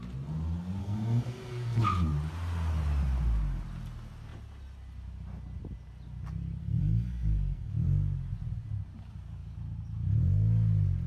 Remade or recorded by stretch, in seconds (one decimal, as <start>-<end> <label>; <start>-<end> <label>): 0.0-0.8 recorded; 0.8-1.8 remade; 1.8-6.6 recorded; 6.6-7.7 remade; 7.7-11.1 recorded